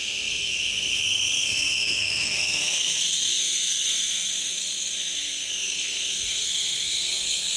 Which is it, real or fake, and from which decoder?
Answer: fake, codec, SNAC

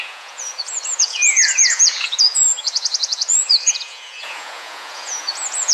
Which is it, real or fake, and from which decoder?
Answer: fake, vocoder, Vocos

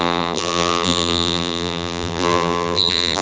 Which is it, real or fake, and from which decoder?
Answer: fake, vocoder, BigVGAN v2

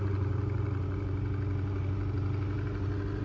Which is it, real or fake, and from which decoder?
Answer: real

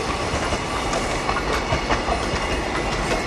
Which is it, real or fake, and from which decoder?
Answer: real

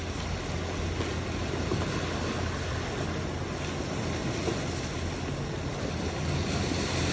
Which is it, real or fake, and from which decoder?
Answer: real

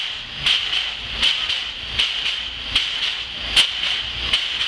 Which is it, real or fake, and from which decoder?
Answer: real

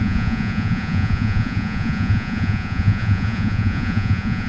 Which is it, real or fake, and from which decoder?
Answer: fake, vocoder, Vocos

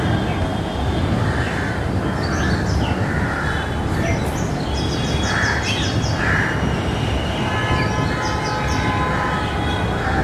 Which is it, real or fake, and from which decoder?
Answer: real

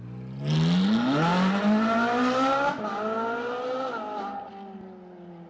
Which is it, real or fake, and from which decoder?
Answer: real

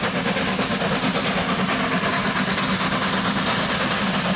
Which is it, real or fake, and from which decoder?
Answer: real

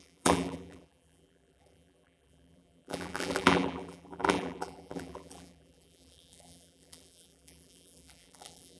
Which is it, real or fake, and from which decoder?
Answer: fake, vocoder, BigVGAN v2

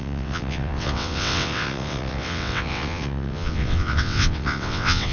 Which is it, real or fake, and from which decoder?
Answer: fake, vocoder, WaveNeXt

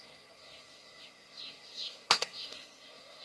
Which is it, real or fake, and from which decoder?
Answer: fake, codec, SNAC